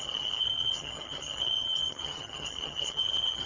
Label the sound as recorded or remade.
remade